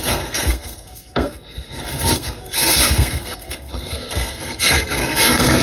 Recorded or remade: remade